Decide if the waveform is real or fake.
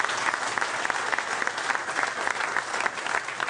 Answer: real